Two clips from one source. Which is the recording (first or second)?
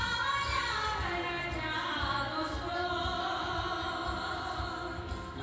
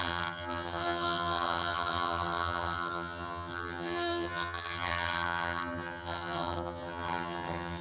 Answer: first